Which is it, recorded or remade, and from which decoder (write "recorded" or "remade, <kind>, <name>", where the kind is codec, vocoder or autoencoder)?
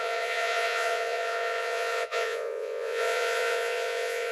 remade, vocoder, Vocos